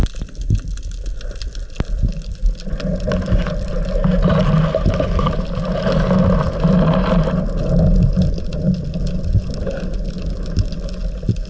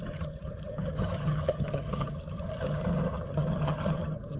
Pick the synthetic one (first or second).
second